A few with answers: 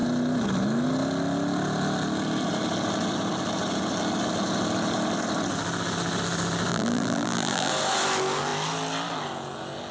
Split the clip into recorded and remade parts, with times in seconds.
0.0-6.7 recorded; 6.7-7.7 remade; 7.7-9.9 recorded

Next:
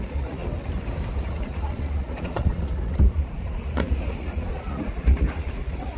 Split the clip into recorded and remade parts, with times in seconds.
0.0-0.4 remade; 0.4-1.1 recorded; 1.1-6.0 remade

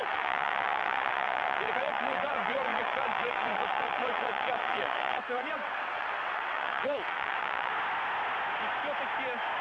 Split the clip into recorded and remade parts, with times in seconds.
0.0-7.7 remade; 7.7-9.6 recorded

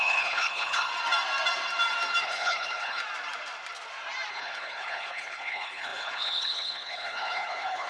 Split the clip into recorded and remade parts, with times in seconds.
0.0-0.9 remade; 0.9-2.2 recorded; 2.2-3.0 remade; 3.0-4.3 recorded; 4.3-7.9 remade

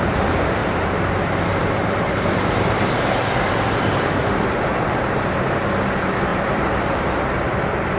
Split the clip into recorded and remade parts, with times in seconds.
0.0-0.6 recorded; 0.6-5.4 remade; 5.4-6.3 recorded; 6.3-8.0 remade